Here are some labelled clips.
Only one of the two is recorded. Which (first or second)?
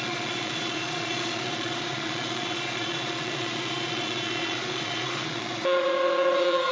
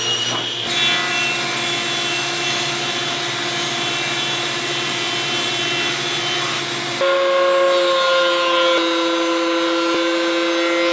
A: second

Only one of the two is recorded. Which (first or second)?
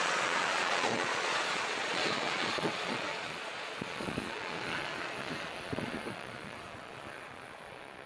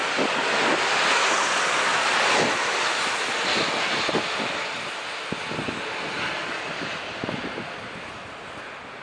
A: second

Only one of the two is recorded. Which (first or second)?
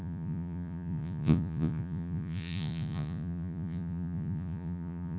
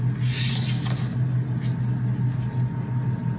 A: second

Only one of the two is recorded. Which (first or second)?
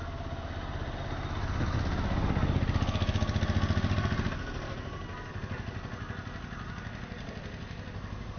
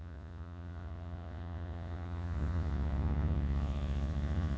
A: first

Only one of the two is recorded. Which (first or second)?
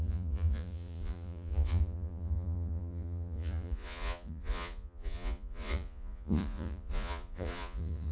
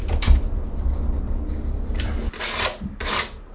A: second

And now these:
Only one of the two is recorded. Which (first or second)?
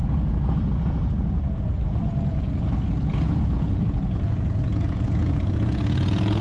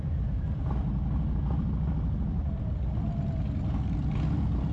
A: second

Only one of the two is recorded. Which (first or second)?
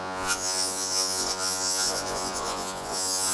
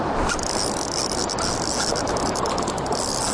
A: second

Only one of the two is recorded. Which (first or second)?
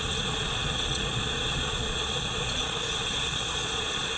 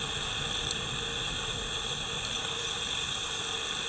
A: second